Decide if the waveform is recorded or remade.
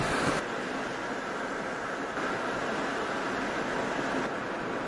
recorded